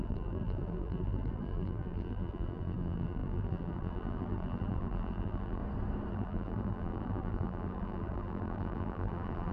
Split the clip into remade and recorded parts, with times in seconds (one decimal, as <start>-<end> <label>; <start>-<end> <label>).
0.0-5.6 remade; 5.6-6.1 recorded; 6.1-9.5 remade